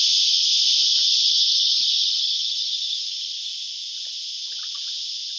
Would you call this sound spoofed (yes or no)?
no